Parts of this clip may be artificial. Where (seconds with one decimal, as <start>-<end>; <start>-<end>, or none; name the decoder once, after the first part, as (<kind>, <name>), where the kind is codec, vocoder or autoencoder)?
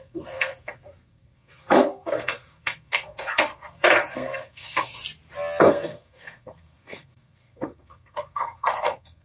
0.0-5.0 (codec, SNAC); 5.6-9.2